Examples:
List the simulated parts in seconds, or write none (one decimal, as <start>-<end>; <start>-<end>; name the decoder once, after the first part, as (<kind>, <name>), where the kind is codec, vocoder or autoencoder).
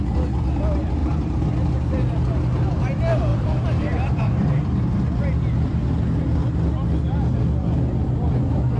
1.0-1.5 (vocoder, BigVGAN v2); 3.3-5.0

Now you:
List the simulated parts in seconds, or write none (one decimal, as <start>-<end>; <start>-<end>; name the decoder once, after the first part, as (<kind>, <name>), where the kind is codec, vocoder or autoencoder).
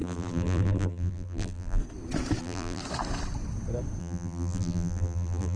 0.0-1.8 (vocoder, BigVGAN v2); 2.4-2.8; 4.0-5.6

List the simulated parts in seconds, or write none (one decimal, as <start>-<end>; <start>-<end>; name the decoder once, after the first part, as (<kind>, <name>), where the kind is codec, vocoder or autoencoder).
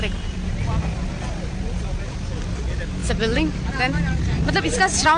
none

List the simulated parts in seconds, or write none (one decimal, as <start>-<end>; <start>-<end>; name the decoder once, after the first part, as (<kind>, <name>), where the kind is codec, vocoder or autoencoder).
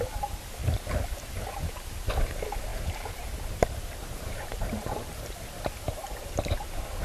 2.7-7.0 (vocoder, BigVGAN v2)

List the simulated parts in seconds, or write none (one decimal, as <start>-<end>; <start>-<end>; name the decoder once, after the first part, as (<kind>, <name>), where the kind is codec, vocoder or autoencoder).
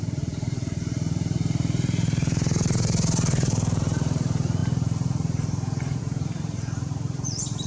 0.0-7.7 (vocoder, BigVGAN v2)